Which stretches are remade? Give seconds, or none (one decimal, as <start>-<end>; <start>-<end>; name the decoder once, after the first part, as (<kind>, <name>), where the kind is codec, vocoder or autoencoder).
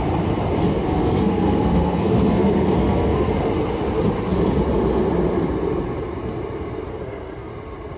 0.7-3.3 (codec, SNAC); 6.9-7.5